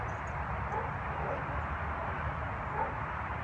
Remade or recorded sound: recorded